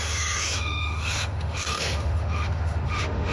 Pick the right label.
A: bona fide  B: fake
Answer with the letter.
B